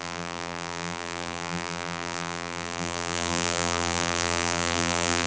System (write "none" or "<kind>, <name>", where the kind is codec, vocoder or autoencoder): vocoder, BigVGAN v2